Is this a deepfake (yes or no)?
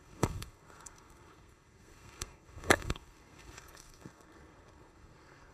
yes